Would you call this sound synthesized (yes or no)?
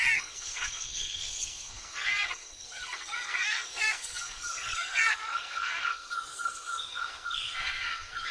yes